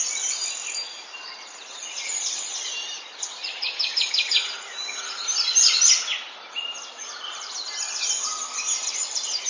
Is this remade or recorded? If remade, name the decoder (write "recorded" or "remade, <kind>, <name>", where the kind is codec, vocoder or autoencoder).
recorded